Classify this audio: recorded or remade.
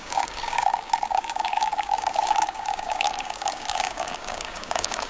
remade